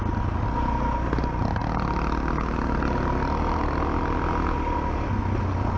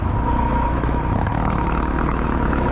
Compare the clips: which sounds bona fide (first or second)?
first